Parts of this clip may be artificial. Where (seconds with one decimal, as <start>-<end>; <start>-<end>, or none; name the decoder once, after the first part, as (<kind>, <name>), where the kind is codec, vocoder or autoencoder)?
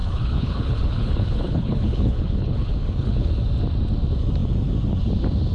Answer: 0.0-3.3 (codec, HILCodec)